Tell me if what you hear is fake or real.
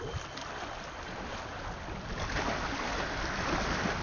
real